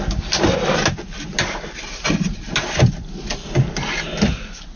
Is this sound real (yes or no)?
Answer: yes